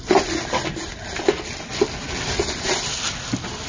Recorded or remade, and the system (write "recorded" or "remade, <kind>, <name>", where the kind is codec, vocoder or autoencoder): recorded